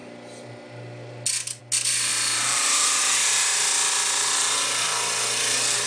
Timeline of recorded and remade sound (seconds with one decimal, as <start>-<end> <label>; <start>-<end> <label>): 0.0-2.1 recorded; 2.1-3.0 remade; 3.0-5.9 recorded